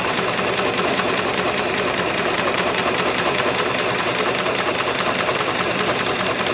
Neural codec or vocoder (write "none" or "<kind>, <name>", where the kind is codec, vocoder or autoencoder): vocoder, BigVGAN v2